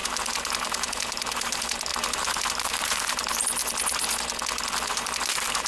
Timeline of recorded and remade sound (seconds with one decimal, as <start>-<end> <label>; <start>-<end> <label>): 0.0-3.6 remade; 3.6-4.9 recorded; 4.9-5.7 remade